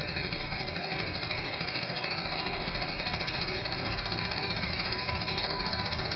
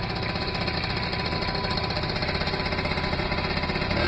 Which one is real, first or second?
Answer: second